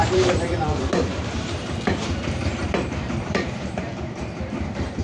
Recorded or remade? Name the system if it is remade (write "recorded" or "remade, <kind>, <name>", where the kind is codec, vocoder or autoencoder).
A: remade, vocoder, BigVGAN v2